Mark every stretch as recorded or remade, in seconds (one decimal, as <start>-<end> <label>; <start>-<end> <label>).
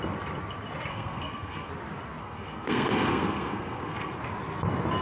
0.0-0.9 recorded; 0.9-1.7 remade; 1.7-2.2 recorded; 2.2-4.2 remade; 4.2-5.0 recorded